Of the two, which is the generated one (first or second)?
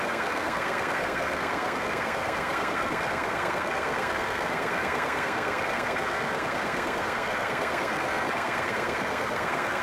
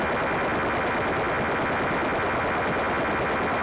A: first